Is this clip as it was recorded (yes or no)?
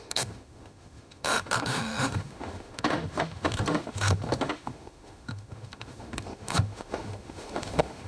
no